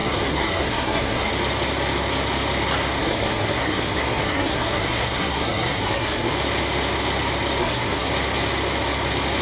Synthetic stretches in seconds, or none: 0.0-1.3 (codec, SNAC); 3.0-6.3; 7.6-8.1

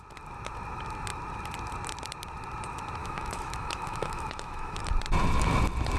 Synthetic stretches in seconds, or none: 3.0-4.8 (autoencoder, DAC-VAE)

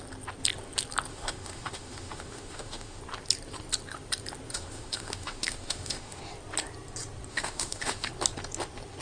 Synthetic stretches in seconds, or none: 1.1-3.0 (autoencoder, DAC-VAE); 4.5-6.2; 7.3-8.1

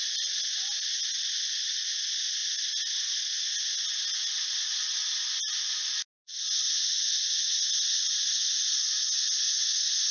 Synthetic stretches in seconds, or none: none

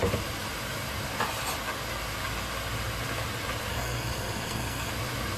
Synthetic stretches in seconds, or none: 3.7-4.9 (codec, SNAC)

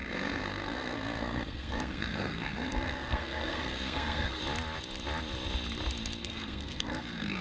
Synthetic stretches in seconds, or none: 0.0-4.4 (codec, SNAC); 6.2-7.4

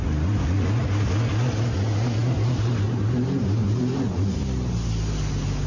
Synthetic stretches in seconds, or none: none

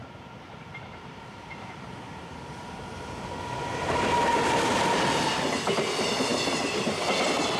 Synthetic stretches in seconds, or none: 0.0-3.3 (vocoder, BigVGAN v2); 3.7-4.4